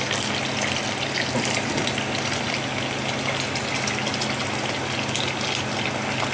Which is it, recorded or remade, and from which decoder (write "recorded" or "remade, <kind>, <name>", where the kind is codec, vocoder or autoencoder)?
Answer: recorded